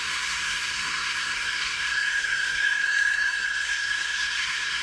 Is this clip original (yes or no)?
no